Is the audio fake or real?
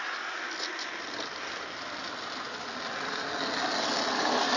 real